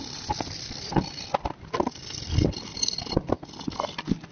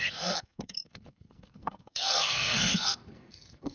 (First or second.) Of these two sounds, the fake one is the second